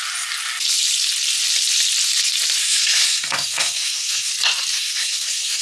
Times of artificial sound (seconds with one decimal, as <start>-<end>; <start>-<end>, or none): 2.6-4.3; 4.7-5.6